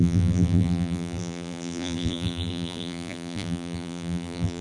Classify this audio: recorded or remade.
remade